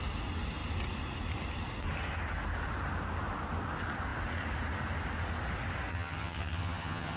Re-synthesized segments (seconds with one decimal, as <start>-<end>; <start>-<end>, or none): 5.9-7.2